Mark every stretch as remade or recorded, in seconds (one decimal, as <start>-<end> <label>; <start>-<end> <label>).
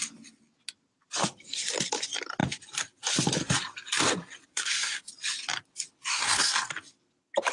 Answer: 0.0-4.5 recorded; 4.5-5.1 remade; 5.1-6.1 recorded; 6.1-6.7 remade; 6.7-7.5 recorded